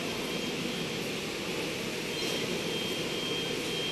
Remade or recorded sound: recorded